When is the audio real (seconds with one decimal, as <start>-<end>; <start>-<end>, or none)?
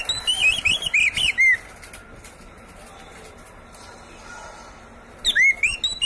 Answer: 0.0-6.1